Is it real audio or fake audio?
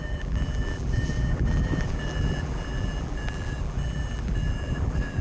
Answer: fake